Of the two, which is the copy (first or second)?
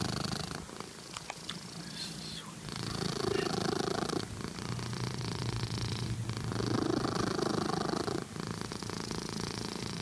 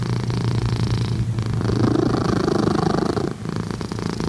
first